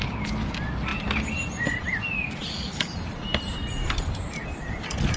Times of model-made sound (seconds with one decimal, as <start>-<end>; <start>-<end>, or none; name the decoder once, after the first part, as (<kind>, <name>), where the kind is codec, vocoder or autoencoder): 3.3-4.8 (vocoder, BigVGAN v2)